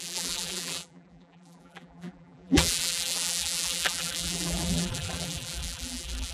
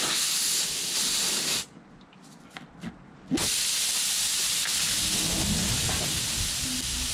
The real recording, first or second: second